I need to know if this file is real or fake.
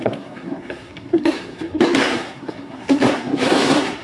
fake